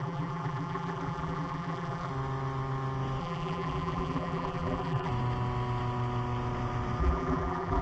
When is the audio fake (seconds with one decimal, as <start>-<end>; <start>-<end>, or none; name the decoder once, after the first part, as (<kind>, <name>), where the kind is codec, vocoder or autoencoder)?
0.0-2.1 (vocoder, BigVGAN v2); 3.2-5.1; 7.0-7.8